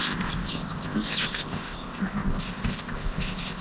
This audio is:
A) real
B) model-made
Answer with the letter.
B